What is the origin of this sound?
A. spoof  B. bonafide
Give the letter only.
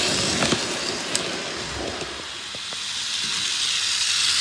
B